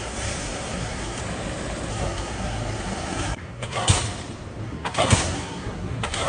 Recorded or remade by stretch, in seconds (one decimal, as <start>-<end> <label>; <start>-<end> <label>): 0.0-1.2 remade; 1.2-1.9 recorded; 1.9-4.0 remade; 4.0-4.6 recorded; 4.6-6.3 remade